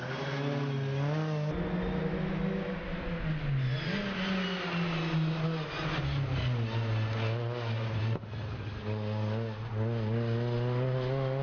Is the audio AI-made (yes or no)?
no